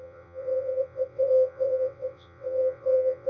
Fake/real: fake